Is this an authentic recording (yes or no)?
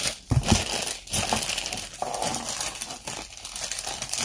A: yes